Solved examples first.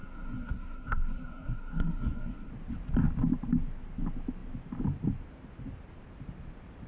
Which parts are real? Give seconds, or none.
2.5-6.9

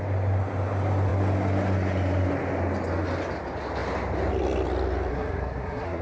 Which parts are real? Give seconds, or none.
0.0-5.1

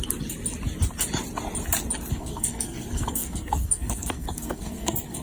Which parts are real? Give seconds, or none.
0.0-2.1